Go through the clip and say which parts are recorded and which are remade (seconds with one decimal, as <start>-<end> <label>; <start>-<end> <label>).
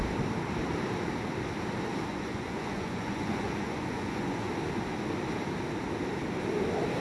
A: 0.0-2.1 recorded; 2.1-4.5 remade; 4.5-7.0 recorded